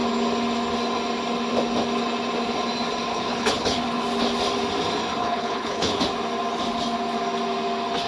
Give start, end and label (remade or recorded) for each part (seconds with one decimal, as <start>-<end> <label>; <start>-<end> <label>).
0.0-3.1 recorded; 3.1-3.8 remade; 3.8-5.2 recorded; 5.2-6.0 remade; 6.0-8.1 recorded